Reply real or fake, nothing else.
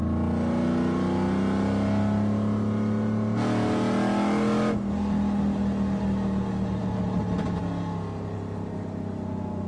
real